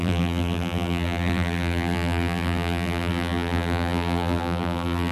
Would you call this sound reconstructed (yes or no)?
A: yes